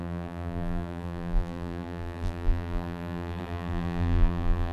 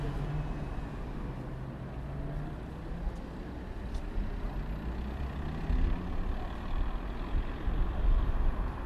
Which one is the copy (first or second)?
first